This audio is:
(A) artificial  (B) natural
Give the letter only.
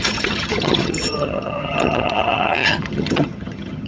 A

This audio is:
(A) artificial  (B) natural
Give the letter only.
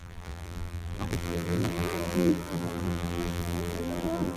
A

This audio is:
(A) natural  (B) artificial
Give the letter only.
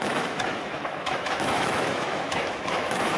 B